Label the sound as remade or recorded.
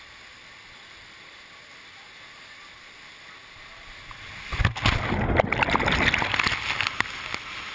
recorded